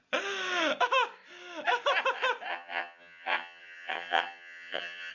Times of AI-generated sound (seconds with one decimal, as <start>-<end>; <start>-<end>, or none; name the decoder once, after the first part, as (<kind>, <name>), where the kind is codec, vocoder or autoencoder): 2.5-5.1 (vocoder, HiFi-GAN)